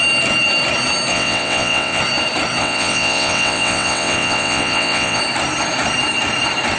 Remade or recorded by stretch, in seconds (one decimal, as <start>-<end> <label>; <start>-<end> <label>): 0.0-1.1 recorded; 1.1-2.0 remade; 2.0-2.6 recorded; 2.6-5.2 remade; 5.2-6.8 recorded

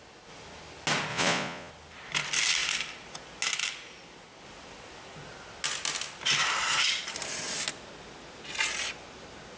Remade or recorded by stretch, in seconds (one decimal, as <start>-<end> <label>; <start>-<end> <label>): 0.0-1.1 recorded; 1.1-1.7 remade; 1.7-9.6 recorded